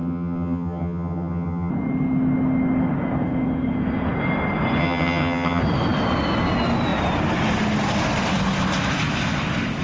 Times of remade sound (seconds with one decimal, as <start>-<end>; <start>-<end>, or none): 0.0-1.7; 4.8-5.6